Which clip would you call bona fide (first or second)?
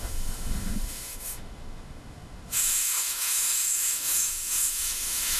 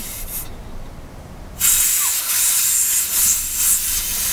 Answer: second